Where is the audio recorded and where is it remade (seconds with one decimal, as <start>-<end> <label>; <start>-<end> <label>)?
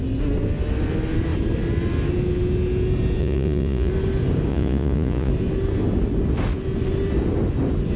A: 0.0-3.2 recorded; 3.2-3.9 remade; 3.9-4.5 recorded; 4.5-5.3 remade; 5.3-8.0 recorded